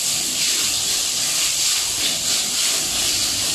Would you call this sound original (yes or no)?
no